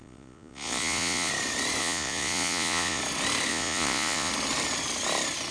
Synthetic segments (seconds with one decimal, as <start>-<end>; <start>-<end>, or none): 0.0-1.3; 1.8-3.0; 3.5-4.3